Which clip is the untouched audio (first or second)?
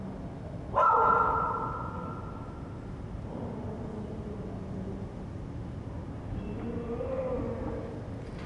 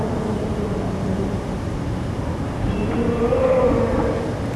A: first